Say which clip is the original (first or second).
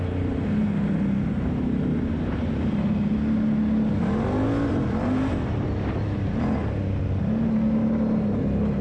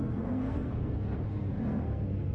first